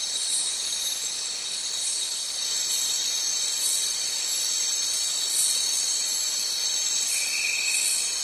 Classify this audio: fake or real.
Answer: fake